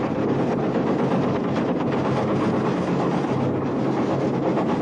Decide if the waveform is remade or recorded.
recorded